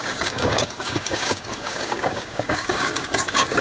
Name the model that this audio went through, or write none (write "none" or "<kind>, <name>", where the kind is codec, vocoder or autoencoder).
codec, DAC